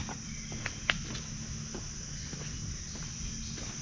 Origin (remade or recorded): recorded